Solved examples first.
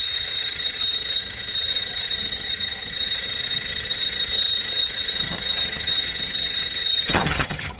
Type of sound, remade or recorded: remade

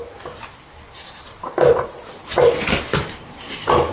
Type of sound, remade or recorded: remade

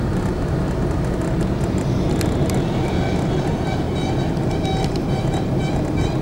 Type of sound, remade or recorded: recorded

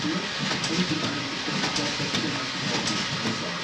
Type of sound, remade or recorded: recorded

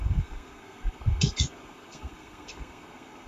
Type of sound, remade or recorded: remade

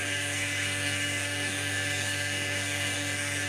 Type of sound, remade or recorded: remade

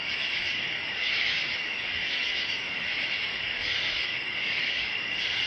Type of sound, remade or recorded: remade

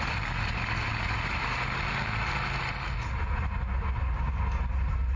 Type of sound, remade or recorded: recorded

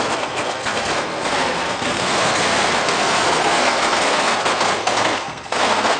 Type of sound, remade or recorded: remade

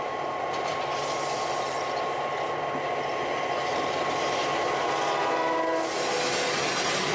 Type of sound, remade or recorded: recorded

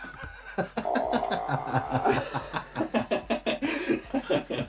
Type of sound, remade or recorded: recorded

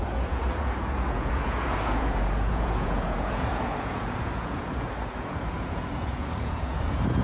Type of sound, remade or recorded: remade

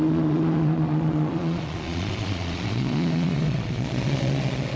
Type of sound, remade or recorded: remade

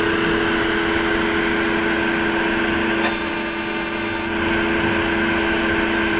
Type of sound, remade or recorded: recorded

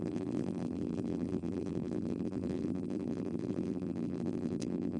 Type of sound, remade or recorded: remade